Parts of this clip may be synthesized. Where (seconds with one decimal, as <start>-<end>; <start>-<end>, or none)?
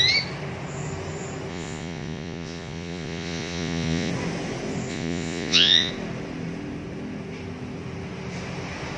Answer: 1.5-4.1; 4.9-5.9